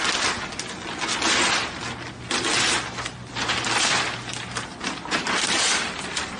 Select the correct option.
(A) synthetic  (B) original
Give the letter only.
B